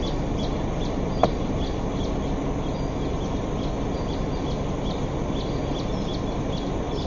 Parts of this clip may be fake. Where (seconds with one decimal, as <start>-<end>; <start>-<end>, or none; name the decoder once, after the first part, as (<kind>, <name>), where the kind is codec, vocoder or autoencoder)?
none